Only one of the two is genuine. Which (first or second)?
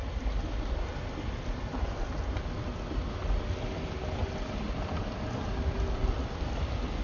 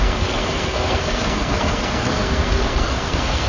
first